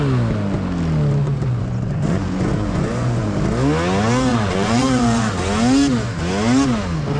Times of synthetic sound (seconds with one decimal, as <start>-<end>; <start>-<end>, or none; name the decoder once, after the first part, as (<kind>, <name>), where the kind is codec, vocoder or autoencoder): 1.2-3.3 (vocoder, Vocos); 4.3-5.3